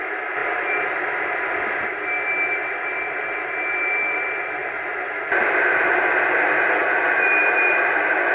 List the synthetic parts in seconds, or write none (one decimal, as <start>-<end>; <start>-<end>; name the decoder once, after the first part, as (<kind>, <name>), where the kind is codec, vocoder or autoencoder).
none